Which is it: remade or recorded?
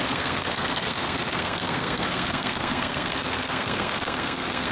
remade